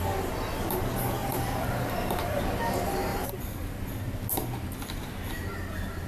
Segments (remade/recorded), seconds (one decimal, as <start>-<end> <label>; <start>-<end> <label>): 0.0-1.2 recorded; 1.2-2.4 remade; 2.4-3.1 recorded; 3.1-3.9 remade; 3.9-6.1 recorded